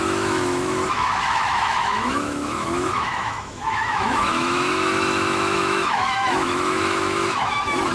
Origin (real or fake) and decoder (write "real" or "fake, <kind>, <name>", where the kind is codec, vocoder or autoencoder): fake, autoencoder, DAC-VAE